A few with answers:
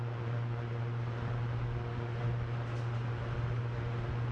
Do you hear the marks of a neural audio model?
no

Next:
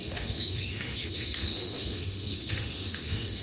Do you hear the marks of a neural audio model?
yes